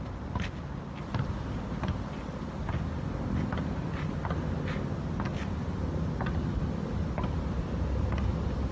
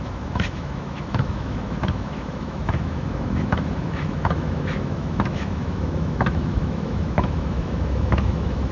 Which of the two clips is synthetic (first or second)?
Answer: second